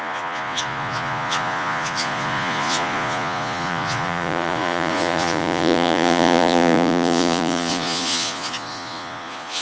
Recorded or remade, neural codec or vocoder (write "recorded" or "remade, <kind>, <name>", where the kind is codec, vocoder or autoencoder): remade, vocoder, Vocos